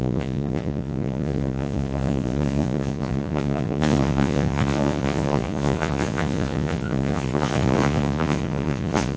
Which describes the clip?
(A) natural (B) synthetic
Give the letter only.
B